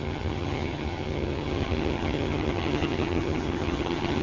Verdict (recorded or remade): remade